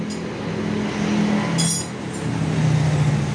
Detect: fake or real real